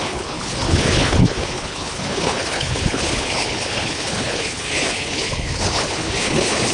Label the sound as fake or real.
fake